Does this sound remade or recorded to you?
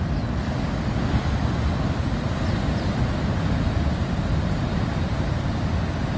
recorded